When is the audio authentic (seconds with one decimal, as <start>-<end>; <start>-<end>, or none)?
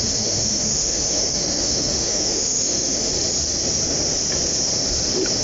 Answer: 3.1-5.4